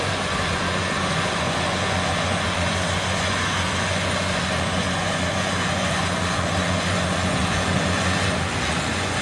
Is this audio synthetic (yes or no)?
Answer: yes